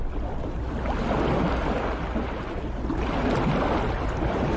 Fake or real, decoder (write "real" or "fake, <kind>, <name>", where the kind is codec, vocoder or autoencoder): real